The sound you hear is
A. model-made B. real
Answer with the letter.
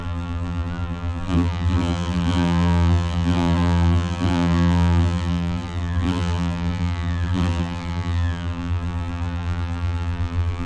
A